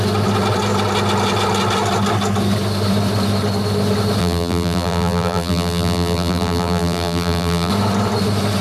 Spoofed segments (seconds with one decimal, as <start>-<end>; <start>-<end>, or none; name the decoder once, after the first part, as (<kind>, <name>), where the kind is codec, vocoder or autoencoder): 4.2-7.7 (vocoder, BigVGAN v2)